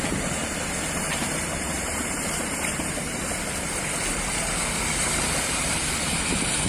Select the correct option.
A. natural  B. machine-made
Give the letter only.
B